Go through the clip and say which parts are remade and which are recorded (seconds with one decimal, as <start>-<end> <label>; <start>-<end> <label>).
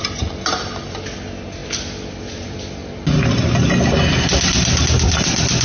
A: 0.0-5.6 recorded